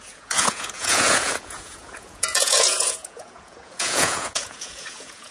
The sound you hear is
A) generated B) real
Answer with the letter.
A